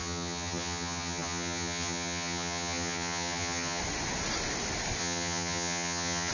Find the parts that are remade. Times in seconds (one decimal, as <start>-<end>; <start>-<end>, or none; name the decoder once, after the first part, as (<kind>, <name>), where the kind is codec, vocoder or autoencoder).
0.0-3.8 (vocoder, HiFi-GAN); 5.0-6.3

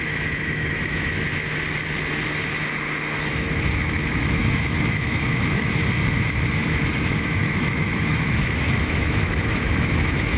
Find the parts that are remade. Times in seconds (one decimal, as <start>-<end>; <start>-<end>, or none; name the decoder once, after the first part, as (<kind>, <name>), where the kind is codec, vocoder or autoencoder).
0.0-1.1 (autoencoder, DAC-VAE); 3.3-5.8; 6.6-10.4

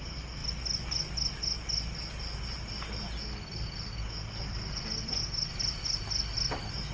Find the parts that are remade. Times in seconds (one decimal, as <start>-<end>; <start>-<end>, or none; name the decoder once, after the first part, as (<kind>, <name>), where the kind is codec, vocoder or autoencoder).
none

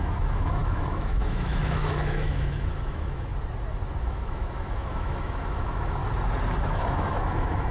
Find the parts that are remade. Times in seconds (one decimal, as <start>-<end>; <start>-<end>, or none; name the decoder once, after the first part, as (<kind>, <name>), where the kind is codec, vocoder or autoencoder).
0.0-3.3 (autoencoder, DAC-VAE); 4.0-6.0; 6.6-7.7

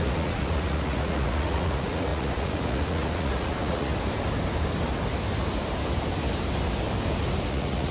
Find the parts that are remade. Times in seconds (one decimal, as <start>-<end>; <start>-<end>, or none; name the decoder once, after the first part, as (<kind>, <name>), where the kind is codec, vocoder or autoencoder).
0.0-3.9 (vocoder, Vocos); 7.5-7.9

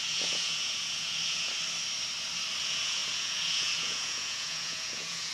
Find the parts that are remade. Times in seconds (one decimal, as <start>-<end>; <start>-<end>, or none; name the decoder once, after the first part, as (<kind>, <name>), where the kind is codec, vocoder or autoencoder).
0.0-1.5 (vocoder, Vocos); 2.6-5.3

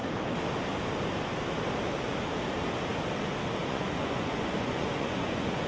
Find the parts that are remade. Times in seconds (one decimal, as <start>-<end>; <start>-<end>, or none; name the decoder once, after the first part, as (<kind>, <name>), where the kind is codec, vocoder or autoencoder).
3.6-5.7 (vocoder, Vocos)

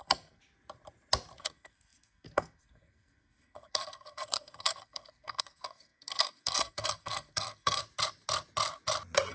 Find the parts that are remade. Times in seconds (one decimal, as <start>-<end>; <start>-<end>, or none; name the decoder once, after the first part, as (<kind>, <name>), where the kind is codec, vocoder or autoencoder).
0.0-0.4 (codec, SNAC); 1.4-7.8